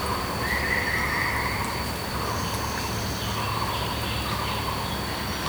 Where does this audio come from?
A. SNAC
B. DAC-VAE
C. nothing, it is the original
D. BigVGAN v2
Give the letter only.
C